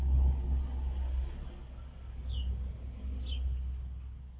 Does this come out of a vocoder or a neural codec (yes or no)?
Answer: no